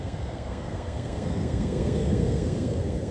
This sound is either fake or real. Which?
fake